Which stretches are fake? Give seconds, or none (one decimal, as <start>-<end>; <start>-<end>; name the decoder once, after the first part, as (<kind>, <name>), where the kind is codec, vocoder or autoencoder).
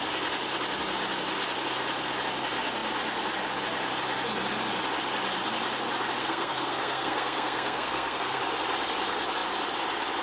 6.2-8.4 (codec, SNAC)